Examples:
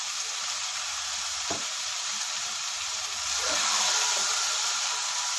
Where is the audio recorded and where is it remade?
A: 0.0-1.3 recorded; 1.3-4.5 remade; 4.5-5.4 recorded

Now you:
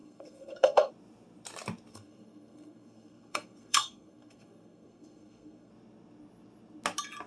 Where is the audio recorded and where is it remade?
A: 0.0-0.9 remade; 0.9-1.9 recorded; 1.9-5.7 remade; 5.7-7.3 recorded

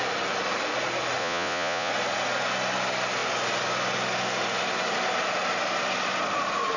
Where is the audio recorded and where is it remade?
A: 0.0-1.2 recorded; 1.2-1.9 remade; 1.9-6.8 recorded

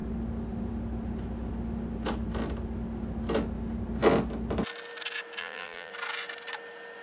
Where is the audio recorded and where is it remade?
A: 0.0-5.4 recorded; 5.4-5.9 remade; 5.9-7.0 recorded